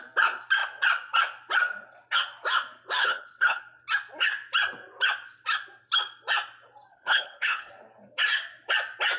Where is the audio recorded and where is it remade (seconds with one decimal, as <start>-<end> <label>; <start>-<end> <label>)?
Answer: 0.0-3.0 recorded; 3.0-3.6 remade; 3.6-6.9 recorded; 6.9-7.7 remade; 7.7-9.2 recorded